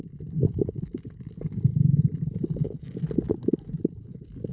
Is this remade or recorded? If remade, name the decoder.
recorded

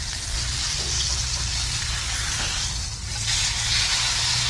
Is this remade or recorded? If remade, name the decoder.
recorded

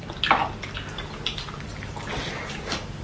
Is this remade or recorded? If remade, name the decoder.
recorded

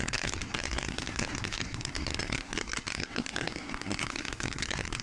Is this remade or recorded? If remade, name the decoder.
remade, codec, SNAC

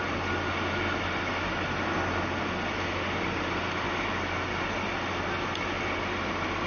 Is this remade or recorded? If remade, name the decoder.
recorded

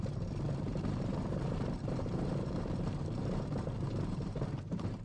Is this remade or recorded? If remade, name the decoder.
remade, vocoder, BigVGAN v2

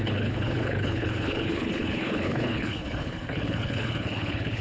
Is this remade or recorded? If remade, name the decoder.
remade, codec, HILCodec